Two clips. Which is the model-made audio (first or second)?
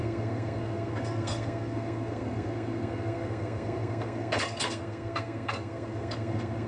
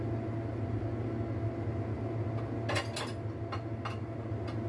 first